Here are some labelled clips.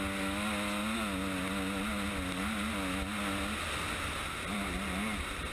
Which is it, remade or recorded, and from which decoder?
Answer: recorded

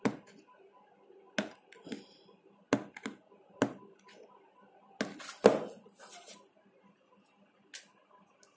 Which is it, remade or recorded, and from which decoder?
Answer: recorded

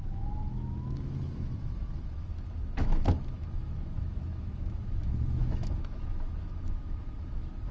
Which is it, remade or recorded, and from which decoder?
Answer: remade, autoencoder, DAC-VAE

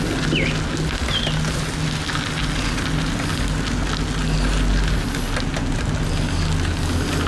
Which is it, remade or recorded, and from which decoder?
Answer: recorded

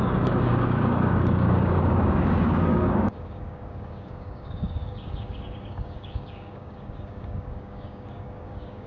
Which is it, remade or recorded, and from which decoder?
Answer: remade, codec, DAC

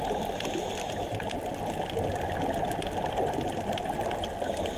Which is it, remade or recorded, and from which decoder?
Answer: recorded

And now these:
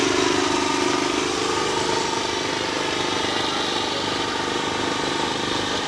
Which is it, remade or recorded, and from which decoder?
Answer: recorded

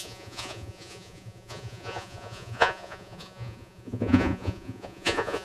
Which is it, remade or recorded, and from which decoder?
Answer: remade, vocoder, Vocos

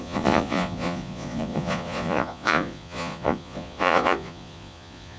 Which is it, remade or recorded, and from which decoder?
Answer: remade, vocoder, Vocos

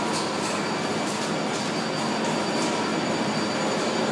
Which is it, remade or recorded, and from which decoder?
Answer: recorded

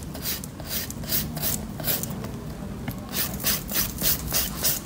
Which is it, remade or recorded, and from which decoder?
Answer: recorded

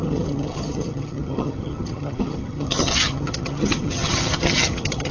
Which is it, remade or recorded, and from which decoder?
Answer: remade, vocoder, HiFi-GAN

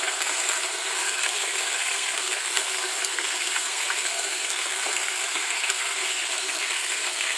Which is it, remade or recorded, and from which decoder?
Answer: remade, codec, SNAC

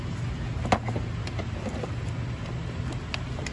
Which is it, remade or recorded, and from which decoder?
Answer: recorded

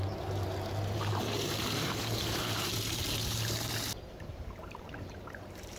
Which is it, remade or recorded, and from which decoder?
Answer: remade, vocoder, BigVGAN v2